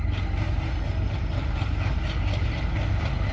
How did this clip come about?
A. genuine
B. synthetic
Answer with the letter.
A